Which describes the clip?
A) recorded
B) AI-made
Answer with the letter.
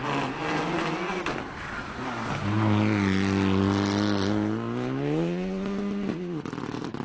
A